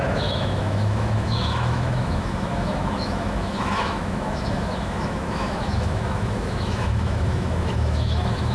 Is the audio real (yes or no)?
no